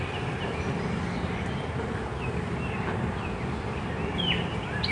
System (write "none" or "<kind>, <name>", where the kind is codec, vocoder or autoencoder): none